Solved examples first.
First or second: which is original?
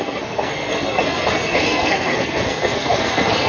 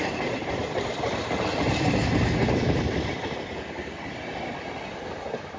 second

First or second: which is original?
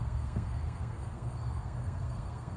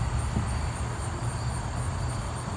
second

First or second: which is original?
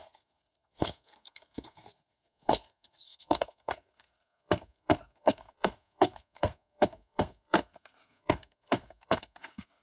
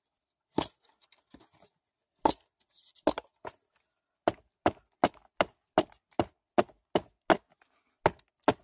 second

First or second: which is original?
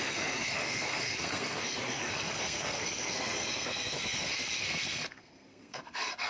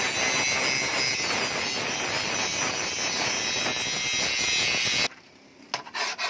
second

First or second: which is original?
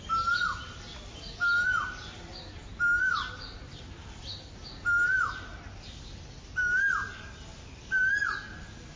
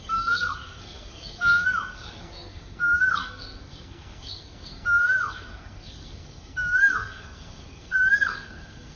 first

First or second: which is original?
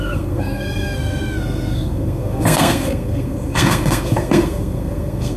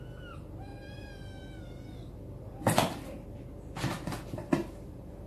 second